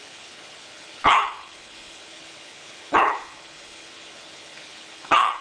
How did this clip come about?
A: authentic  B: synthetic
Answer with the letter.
B